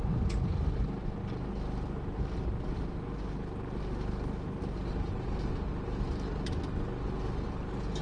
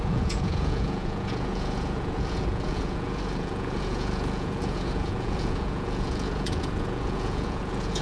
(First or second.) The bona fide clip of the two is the first